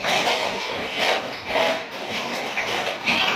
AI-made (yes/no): yes